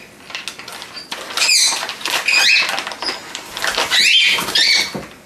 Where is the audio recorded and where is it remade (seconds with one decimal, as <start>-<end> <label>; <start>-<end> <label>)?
0.0-5.3 recorded

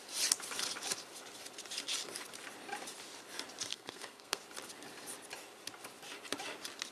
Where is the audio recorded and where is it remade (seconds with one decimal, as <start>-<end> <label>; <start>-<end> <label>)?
0.0-3.7 recorded; 3.7-4.4 remade; 4.4-6.9 recorded

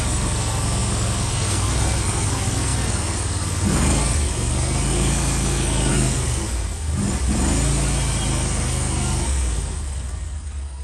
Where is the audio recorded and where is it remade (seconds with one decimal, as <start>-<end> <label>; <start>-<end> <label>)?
0.0-6.9 remade; 6.9-8.3 recorded; 8.3-10.8 remade